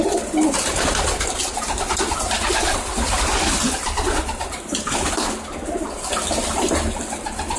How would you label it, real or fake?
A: real